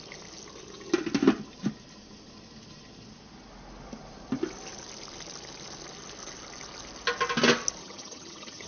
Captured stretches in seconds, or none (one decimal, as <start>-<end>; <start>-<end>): 0.0-7.8